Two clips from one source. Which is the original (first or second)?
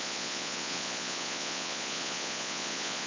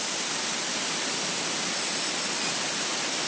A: second